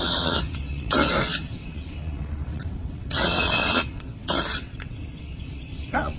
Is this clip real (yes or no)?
no